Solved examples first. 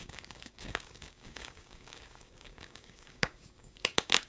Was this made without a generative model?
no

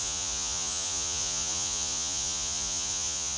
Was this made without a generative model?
no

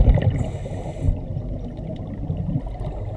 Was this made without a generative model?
yes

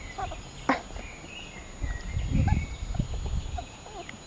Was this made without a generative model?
yes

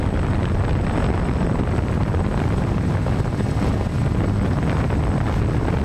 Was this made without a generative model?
no